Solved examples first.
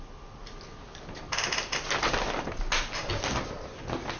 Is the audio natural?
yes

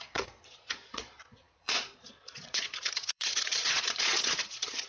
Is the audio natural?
no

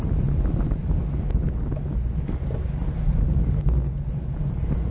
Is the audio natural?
yes